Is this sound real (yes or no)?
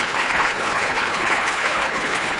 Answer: no